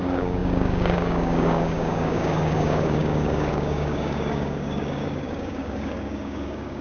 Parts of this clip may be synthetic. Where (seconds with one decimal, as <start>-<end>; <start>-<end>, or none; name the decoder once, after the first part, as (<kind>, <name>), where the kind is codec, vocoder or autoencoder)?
0.0-6.8 (codec, DAC)